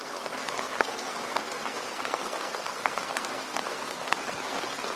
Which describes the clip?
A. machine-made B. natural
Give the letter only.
A